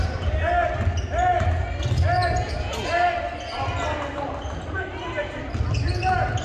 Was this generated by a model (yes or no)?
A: no